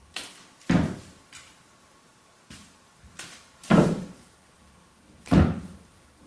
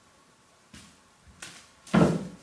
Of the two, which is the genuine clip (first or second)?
second